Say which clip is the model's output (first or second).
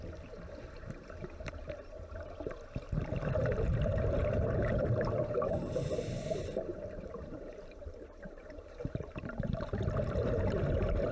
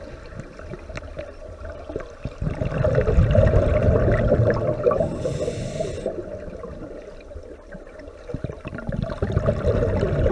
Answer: first